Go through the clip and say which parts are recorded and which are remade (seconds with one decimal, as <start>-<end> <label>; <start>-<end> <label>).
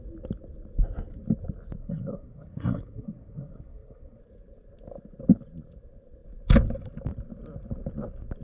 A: 0.0-1.8 recorded; 1.8-4.2 remade; 4.2-8.4 recorded